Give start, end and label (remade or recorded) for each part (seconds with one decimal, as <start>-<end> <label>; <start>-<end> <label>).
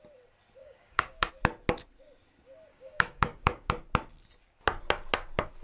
0.0-0.6 recorded; 0.6-1.3 remade; 1.3-2.7 recorded; 2.7-3.7 remade; 3.7-5.6 recorded